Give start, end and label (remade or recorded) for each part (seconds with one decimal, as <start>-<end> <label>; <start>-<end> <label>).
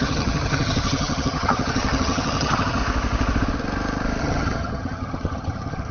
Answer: 0.0-2.8 remade; 2.8-4.2 recorded; 4.2-5.9 remade